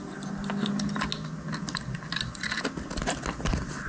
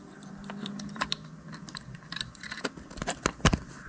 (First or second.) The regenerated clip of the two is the second